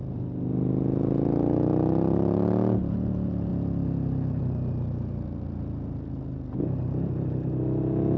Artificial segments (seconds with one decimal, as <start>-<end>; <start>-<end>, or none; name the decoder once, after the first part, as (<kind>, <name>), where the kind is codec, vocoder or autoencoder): none